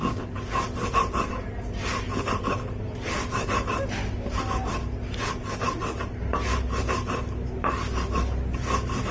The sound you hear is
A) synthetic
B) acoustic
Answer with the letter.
B